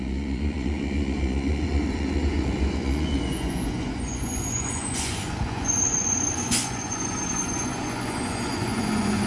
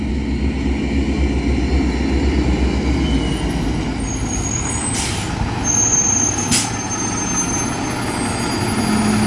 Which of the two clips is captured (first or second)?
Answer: second